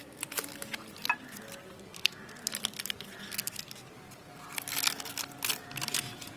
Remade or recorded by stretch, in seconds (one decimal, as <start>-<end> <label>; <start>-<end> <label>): 0.0-6.4 recorded